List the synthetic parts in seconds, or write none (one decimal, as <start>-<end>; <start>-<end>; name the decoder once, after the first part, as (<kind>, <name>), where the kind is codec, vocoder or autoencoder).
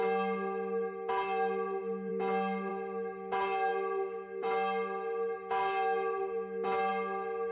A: none